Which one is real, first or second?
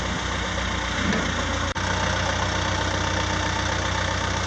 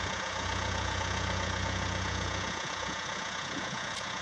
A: first